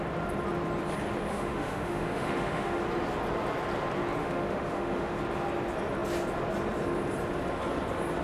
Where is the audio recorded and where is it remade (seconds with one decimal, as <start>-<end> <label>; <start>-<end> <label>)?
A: 0.0-1.3 recorded; 1.3-2.8 remade; 2.8-4.2 recorded; 4.2-5.2 remade; 5.2-8.2 recorded